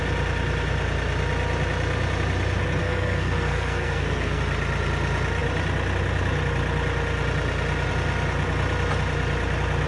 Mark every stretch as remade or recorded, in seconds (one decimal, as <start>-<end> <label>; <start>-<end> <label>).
0.0-2.8 recorded; 2.8-4.4 remade; 4.4-9.9 recorded

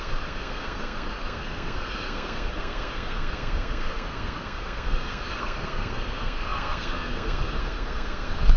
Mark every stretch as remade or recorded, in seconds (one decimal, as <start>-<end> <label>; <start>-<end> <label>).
0.0-8.6 remade

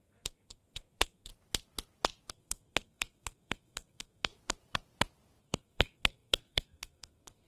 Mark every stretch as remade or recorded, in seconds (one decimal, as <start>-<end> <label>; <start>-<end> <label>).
0.0-1.3 remade; 1.3-2.3 recorded; 2.3-4.3 remade; 4.3-5.4 recorded; 5.4-7.5 remade

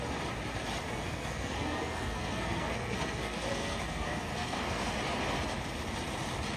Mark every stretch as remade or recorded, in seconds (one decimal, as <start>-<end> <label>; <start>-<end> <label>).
0.0-0.9 recorded; 0.9-4.9 remade; 4.9-6.6 recorded